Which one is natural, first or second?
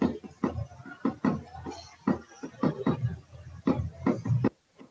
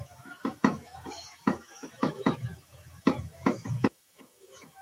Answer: first